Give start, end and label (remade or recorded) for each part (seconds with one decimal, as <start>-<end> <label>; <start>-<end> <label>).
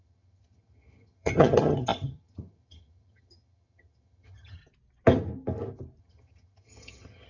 0.0-4.6 remade; 4.6-6.0 recorded; 6.0-7.3 remade